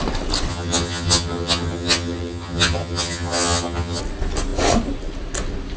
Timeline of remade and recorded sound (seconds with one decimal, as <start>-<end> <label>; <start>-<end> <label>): 0.0-0.5 recorded; 0.5-4.0 remade; 4.0-5.8 recorded